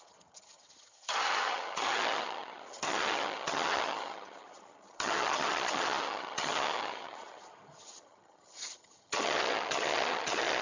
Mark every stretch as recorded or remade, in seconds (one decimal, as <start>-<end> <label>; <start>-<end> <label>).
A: 0.0-10.6 remade